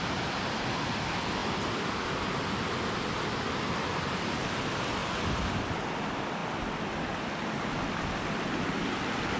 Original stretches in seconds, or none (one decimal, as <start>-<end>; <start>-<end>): 0.0-9.4